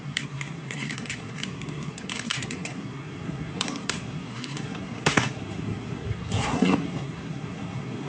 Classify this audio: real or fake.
fake